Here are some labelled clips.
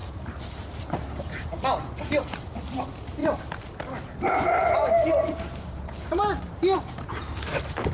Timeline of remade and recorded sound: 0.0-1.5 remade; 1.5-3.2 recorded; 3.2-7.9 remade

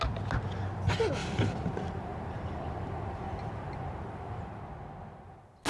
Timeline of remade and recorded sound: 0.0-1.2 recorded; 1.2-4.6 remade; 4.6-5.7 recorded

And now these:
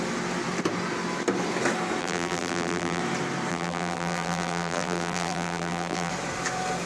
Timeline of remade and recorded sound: 0.0-2.0 recorded; 2.0-3.0 remade; 3.0-3.5 recorded; 3.5-6.1 remade; 6.1-6.9 recorded

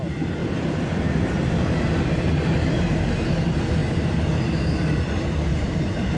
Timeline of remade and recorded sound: 0.0-0.4 recorded; 0.4-3.1 remade; 3.1-5.5 recorded; 5.5-6.2 remade

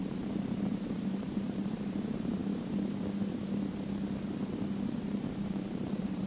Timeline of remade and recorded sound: 0.0-2.4 remade; 2.4-5.0 recorded; 5.0-6.3 remade

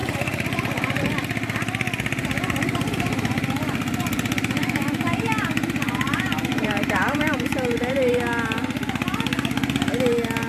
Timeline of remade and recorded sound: 0.0-1.0 remade; 1.0-6.5 recorded; 6.5-8.1 remade; 8.1-10.5 recorded

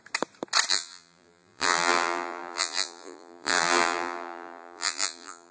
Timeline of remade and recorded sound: 0.0-0.7 recorded; 0.7-5.5 remade

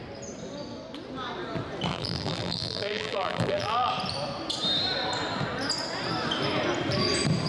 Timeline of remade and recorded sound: 0.0-1.9 recorded; 1.9-3.9 remade; 3.9-7.5 recorded